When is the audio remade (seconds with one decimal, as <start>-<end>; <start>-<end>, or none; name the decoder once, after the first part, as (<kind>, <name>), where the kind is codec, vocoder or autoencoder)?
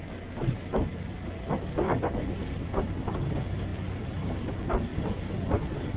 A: none